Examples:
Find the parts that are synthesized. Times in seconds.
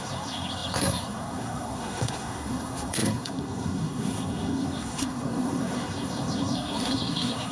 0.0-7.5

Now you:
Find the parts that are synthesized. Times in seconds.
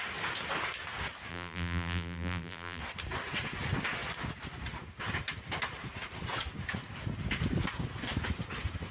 1.3-2.8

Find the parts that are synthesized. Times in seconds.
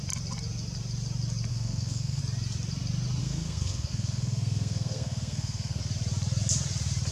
1.5-2.2; 3.2-5.8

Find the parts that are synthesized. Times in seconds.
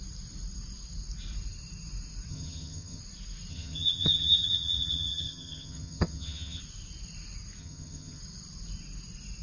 2.3-3.0; 3.5-6.6; 7.6-8.2